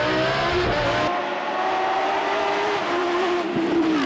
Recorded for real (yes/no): yes